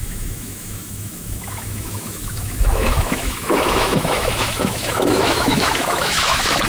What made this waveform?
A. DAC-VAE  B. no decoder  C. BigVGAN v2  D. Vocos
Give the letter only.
A